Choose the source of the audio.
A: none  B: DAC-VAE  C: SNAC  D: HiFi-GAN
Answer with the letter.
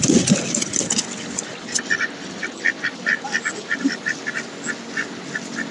A